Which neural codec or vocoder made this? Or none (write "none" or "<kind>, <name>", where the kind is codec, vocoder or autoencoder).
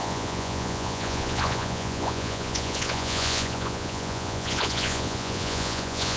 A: vocoder, Vocos